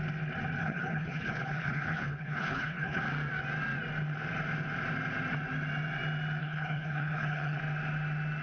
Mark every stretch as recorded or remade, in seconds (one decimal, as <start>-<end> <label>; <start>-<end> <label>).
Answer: 0.0-0.6 recorded; 0.6-3.0 remade; 3.0-6.4 recorded; 6.4-7.6 remade; 7.6-8.4 recorded

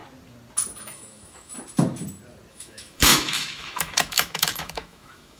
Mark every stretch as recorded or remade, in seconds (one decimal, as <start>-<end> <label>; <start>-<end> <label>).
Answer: 0.0-0.8 recorded; 0.8-1.5 remade; 1.5-2.5 recorded; 2.5-5.4 remade

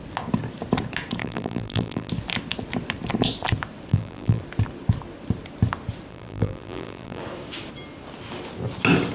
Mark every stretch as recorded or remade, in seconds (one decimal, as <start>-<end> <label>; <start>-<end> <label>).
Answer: 0.0-1.2 recorded; 1.2-2.1 remade; 2.1-3.9 recorded; 3.9-4.4 remade; 4.4-6.1 recorded; 6.1-7.2 remade; 7.2-9.1 recorded